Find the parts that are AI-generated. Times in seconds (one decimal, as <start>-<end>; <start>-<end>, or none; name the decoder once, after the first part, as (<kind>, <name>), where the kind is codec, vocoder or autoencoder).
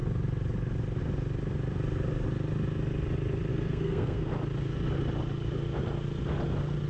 3.5-4.3 (codec, SNAC)